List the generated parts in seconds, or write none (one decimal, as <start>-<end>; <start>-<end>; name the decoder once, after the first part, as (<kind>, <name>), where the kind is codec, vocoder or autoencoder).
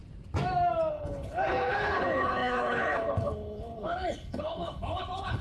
0.9-5.4 (codec, HILCodec)